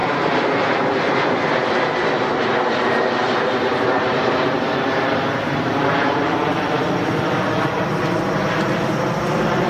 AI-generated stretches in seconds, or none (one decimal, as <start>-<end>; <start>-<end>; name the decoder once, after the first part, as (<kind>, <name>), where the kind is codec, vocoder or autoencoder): 3.7-7.9 (vocoder, BigVGAN v2)